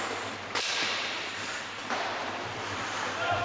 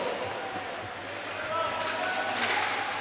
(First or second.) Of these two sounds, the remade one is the first